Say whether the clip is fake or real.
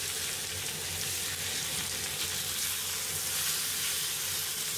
real